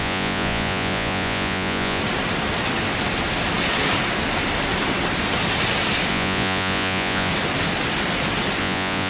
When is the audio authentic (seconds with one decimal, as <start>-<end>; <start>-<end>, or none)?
2.0-6.1; 7.3-8.6